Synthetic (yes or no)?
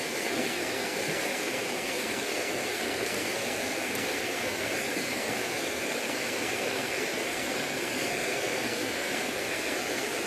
yes